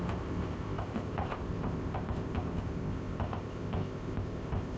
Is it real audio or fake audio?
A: fake